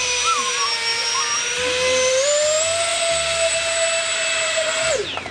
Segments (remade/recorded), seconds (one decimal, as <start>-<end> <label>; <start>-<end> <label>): 0.0-5.3 recorded